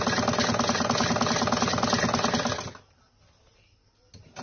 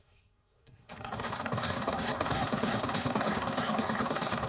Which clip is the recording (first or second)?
first